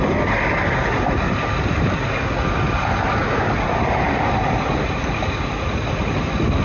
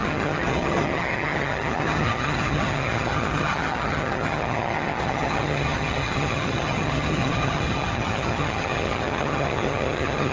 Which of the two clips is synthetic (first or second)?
second